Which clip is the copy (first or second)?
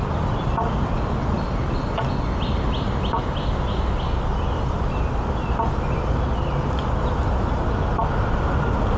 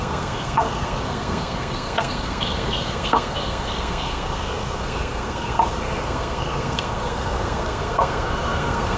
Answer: second